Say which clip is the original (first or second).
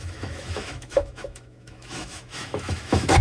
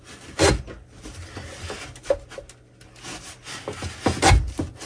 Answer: second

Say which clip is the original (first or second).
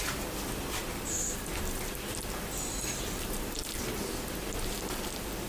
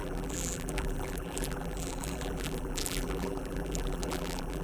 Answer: first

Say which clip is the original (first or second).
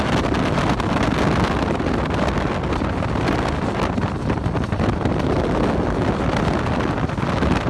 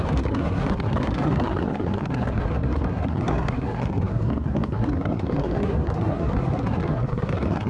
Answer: first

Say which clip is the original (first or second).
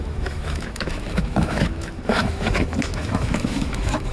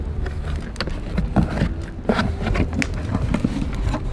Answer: second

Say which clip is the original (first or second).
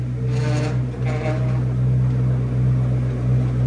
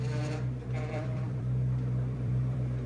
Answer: first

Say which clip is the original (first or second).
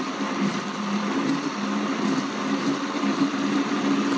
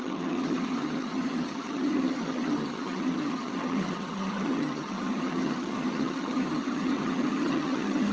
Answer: first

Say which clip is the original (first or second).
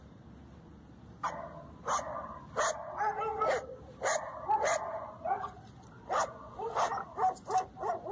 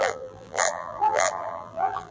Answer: first